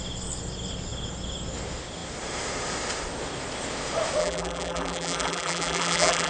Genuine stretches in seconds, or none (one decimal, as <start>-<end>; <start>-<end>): 0.0-4.2